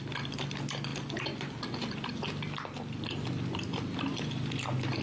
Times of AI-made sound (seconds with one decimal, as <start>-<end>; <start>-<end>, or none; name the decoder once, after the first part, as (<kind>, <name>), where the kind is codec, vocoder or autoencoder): none